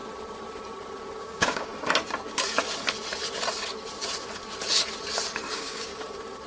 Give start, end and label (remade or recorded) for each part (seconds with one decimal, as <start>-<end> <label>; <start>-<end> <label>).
0.0-1.2 recorded; 1.2-1.7 remade; 1.7-5.5 recorded; 5.5-5.9 remade; 5.9-6.5 recorded